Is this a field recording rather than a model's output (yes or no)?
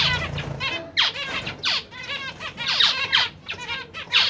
yes